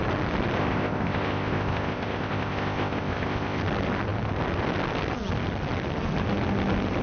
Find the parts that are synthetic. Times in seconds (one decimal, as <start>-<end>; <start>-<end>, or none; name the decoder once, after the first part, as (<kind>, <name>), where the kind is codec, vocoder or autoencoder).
0.6-3.6 (codec, ZipCodec)